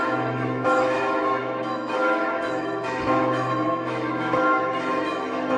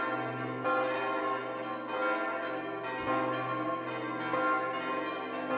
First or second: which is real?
second